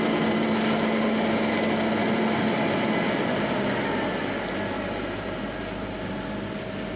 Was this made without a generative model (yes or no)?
yes